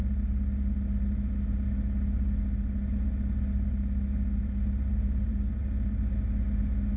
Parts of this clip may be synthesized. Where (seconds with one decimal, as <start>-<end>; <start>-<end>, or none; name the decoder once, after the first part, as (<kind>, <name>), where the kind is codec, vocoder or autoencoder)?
none